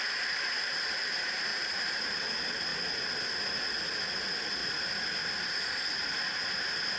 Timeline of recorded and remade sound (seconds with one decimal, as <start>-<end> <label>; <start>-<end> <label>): 0.0-1.5 recorded; 1.5-2.3 remade; 2.3-7.0 recorded